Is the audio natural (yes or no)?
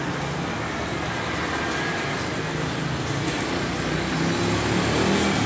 yes